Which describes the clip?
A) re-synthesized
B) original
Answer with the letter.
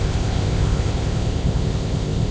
A